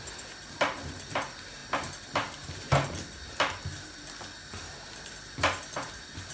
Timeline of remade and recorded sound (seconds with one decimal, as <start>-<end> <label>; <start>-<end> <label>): 0.0-1.6 remade; 1.6-5.4 recorded; 5.4-6.3 remade